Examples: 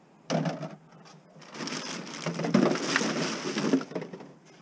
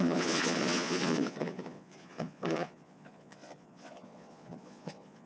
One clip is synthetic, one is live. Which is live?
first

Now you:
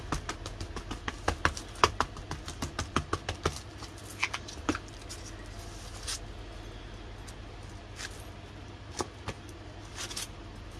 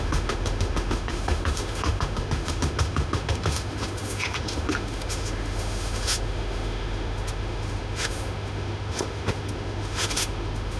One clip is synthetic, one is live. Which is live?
first